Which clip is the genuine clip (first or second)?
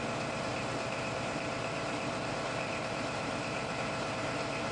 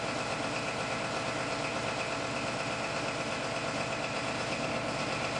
second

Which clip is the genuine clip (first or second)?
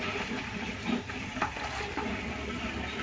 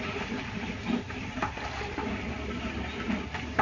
first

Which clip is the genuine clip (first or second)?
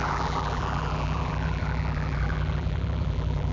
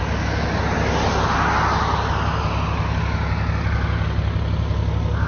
second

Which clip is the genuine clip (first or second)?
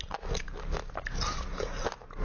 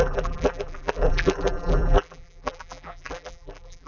first